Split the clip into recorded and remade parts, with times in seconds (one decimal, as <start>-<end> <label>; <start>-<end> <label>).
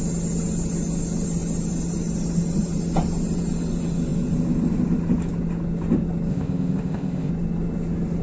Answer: 0.0-6.3 recorded; 6.3-7.3 remade; 7.3-8.2 recorded